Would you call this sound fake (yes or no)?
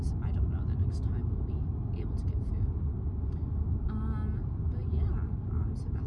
no